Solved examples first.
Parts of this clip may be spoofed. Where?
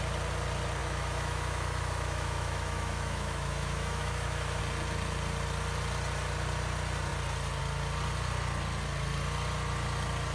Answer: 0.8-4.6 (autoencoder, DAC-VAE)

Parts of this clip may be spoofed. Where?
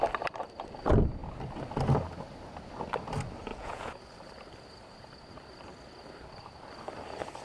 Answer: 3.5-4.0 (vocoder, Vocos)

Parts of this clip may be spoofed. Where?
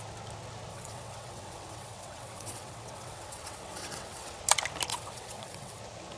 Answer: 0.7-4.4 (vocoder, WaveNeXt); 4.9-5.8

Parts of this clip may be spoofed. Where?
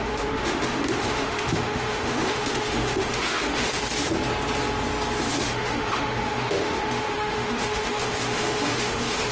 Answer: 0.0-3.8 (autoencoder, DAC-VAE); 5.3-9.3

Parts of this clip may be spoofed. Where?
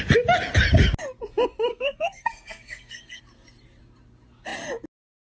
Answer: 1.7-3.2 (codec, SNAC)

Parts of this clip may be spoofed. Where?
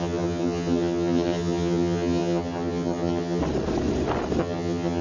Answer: 0.0-3.4 (vocoder, HiFi-GAN); 4.4-5.0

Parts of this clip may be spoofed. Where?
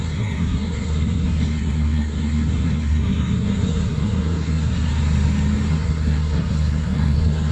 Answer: 0.0-4.9 (codec, SNAC); 5.7-7.5